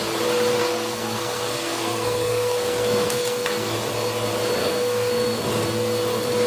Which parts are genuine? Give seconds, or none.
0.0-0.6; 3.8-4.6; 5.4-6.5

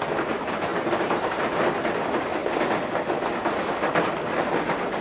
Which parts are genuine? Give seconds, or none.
0.0-5.0

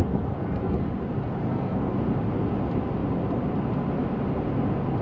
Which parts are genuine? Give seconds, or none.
0.8-1.4; 1.9-5.0

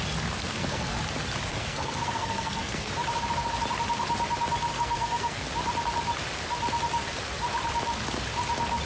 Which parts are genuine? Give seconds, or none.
0.0-0.4; 1.0-1.5; 2.9-4.7; 5.5-8.9